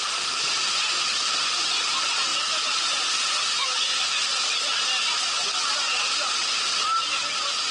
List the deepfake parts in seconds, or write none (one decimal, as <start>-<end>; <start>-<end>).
3.5-4.2